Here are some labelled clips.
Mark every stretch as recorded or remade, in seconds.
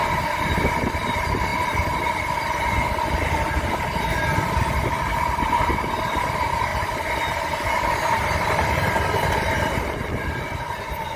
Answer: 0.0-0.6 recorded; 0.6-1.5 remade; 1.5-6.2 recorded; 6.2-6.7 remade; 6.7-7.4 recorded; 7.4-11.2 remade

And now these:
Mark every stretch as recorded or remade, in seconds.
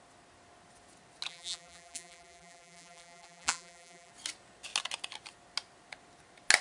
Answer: 0.0-1.3 recorded; 1.3-4.1 remade; 4.1-6.6 recorded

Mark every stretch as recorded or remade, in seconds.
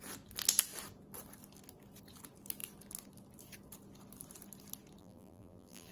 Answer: 0.0-5.0 recorded; 5.0-5.9 remade